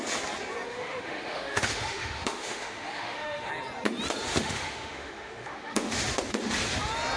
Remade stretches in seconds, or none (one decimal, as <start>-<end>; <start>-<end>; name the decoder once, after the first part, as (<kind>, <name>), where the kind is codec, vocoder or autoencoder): 0.7-3.5 (autoencoder, DAC-VAE); 4.3-6.0